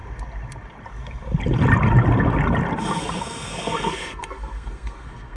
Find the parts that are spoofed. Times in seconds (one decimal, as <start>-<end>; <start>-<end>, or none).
3.2-5.4